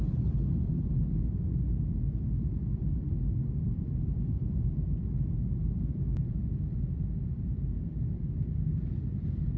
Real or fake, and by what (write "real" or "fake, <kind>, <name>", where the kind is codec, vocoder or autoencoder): real